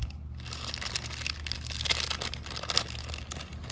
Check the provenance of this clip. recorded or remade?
recorded